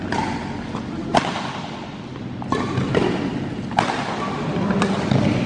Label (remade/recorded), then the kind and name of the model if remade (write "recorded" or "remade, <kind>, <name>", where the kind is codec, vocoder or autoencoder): recorded